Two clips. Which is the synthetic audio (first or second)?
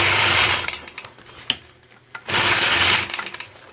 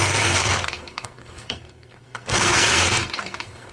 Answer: second